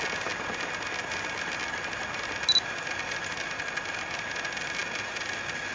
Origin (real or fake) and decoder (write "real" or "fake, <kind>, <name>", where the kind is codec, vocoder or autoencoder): real